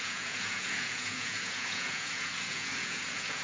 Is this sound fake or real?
fake